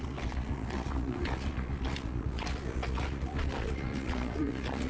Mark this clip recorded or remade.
remade